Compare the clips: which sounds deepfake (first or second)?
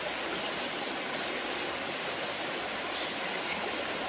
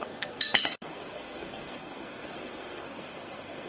second